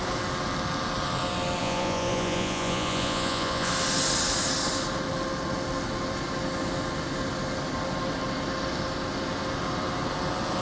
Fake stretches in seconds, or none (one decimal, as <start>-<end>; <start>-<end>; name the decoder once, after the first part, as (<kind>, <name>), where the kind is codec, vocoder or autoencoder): 1.6-3.7 (vocoder, Vocos)